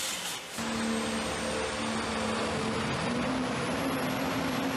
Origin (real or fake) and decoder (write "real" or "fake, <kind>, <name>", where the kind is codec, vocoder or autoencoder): real